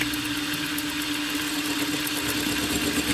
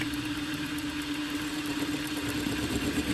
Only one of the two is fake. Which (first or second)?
second